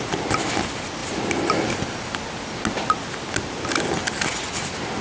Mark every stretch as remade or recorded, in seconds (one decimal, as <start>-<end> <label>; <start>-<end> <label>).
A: 0.0-5.0 recorded

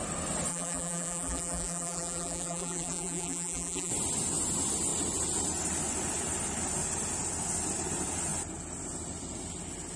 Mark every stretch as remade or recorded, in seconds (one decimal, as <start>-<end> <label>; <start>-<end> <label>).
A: 0.0-0.5 recorded; 0.5-3.9 remade; 3.9-10.0 recorded